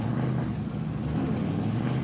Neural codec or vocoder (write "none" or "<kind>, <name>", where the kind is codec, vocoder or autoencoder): none